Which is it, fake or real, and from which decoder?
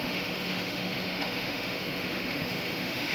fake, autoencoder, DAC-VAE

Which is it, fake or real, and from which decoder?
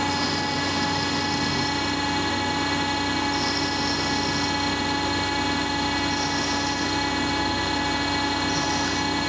real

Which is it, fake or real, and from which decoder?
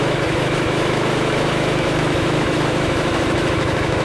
fake, autoencoder, DAC-VAE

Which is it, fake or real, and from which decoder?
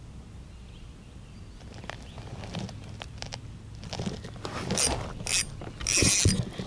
real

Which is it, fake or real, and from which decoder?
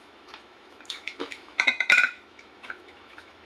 fake, autoencoder, DAC-VAE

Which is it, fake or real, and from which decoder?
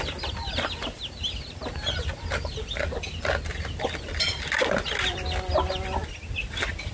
real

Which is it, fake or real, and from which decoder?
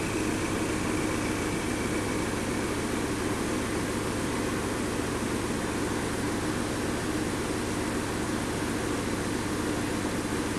real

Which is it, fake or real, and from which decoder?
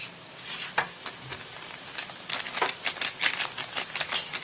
real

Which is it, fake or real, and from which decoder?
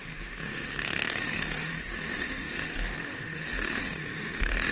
fake, autoencoder, DAC-VAE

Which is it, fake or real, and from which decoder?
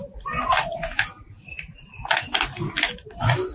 real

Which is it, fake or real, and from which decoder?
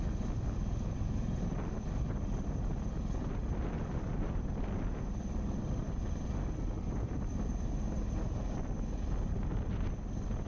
real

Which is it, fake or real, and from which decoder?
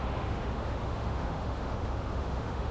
fake, autoencoder, DAC-VAE